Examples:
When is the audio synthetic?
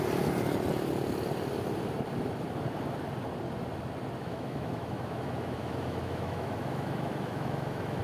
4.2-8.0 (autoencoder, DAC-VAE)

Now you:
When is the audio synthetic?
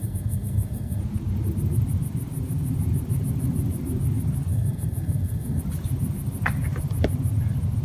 0.0-1.0 (codec, SNAC); 4.5-5.6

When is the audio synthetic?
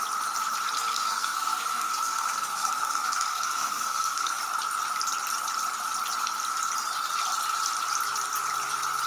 0.9-4.4 (codec, SNAC)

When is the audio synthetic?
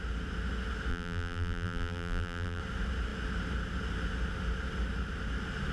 0.9-2.6 (vocoder, BigVGAN v2)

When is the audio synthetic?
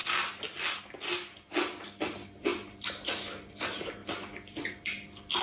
2.5-3.1 (vocoder, BigVGAN v2)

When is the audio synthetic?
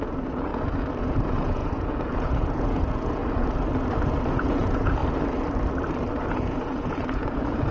0.0-0.5 (vocoder, Vocos); 1.0-3.2; 4.3-5.0; 6.3-7.7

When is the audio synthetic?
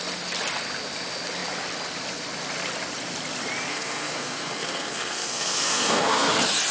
3.7-6.3 (codec, SNAC)